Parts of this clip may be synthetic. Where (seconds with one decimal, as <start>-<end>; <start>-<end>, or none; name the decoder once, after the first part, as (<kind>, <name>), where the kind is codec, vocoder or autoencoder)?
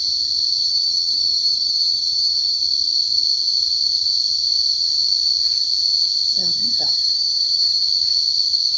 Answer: 0.6-2.6 (vocoder, HiFi-GAN); 6.4-7.8